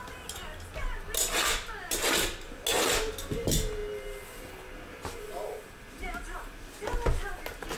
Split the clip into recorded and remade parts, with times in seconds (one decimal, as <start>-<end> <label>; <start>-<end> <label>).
0.0-7.8 recorded